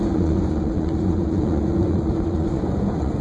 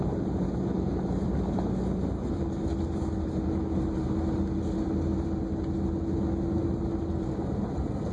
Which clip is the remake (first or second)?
first